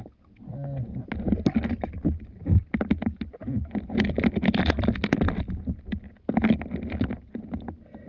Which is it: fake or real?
real